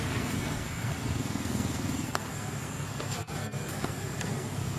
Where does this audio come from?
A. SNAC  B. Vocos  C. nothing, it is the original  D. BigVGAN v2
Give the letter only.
A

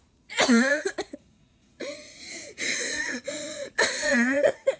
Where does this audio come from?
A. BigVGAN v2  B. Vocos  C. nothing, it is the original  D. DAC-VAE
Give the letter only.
B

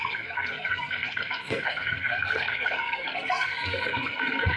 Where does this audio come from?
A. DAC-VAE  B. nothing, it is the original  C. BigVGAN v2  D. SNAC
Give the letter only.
D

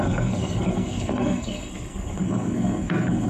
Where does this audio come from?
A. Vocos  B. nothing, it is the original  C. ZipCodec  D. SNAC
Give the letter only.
D